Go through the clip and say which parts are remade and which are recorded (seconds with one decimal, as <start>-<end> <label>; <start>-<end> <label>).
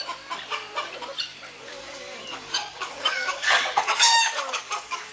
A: 0.0-1.6 recorded; 1.6-5.1 remade